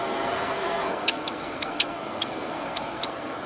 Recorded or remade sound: remade